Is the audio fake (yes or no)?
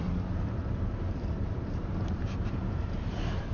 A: yes